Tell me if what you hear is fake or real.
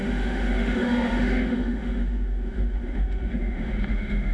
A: fake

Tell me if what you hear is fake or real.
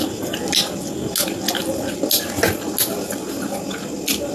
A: real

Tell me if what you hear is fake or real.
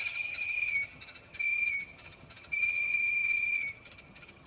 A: fake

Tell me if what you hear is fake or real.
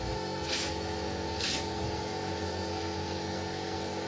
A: fake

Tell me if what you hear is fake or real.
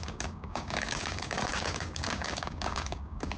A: fake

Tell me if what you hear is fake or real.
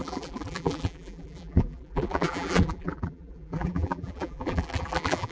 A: fake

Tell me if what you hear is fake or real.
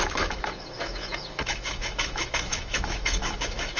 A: fake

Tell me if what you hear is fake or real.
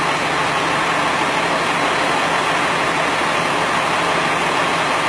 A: real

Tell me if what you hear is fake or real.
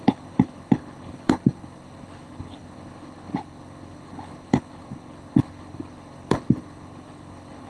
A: fake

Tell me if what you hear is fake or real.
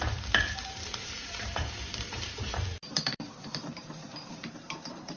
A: fake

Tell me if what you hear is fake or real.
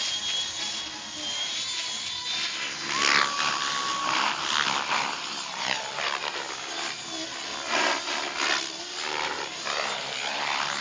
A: real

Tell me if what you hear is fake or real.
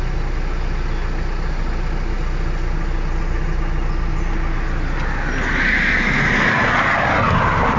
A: real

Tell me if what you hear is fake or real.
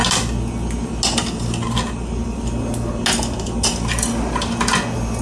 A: real